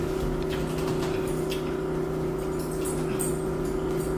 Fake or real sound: real